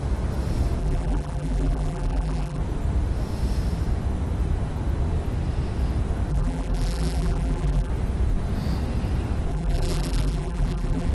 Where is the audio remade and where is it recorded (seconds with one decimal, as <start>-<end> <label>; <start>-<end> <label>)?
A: 0.0-0.8 recorded; 0.8-2.6 remade; 2.6-6.3 recorded; 6.3-7.9 remade; 7.9-9.5 recorded; 9.5-11.1 remade